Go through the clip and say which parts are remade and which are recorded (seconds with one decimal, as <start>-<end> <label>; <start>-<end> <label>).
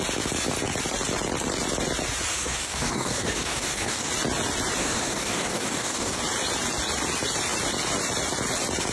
0.0-2.3 recorded; 2.3-4.1 remade; 4.1-4.8 recorded; 4.8-6.2 remade; 6.2-8.9 recorded